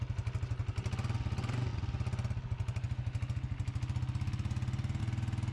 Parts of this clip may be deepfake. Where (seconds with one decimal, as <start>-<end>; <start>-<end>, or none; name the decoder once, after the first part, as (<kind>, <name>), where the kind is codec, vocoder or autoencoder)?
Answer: none